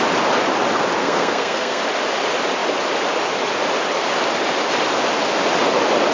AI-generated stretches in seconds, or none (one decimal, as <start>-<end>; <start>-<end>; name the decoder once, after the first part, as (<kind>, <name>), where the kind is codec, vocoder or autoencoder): 1.0-1.8 (codec, SNAC)